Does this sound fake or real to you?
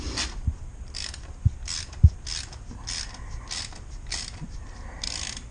real